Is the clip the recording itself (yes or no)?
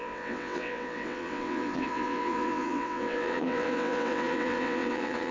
no